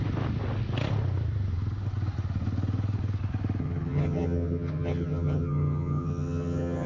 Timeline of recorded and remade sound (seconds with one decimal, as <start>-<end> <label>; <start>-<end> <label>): 0.0-3.6 recorded; 3.6-6.9 remade